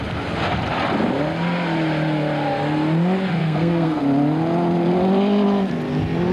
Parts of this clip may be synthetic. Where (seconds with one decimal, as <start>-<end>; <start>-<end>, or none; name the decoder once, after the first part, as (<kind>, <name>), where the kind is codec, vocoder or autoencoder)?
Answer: 3.4-4.0 (codec, SNAC)